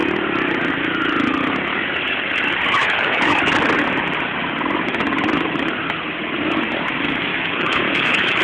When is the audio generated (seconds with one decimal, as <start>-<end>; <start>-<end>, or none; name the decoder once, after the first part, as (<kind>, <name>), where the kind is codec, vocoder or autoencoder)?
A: 2.8-3.4 (autoencoder, DAC-VAE); 7.3-8.4